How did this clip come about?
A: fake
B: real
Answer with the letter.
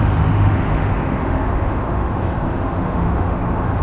A